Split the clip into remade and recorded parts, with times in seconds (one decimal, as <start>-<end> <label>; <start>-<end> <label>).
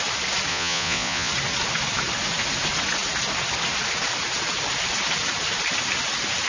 0.0-0.5 recorded; 0.5-1.3 remade; 1.3-6.5 recorded